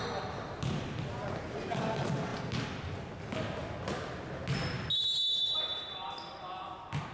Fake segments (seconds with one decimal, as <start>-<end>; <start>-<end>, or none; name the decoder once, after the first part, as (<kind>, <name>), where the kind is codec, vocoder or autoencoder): none